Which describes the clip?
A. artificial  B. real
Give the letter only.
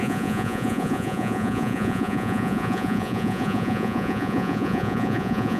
A